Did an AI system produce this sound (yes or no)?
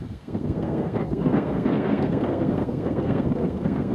yes